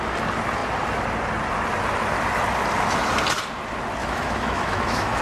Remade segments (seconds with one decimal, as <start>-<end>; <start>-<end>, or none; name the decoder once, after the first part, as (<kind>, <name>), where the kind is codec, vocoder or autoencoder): 4.0-5.2 (autoencoder, DAC-VAE)